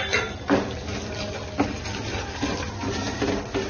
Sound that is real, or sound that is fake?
real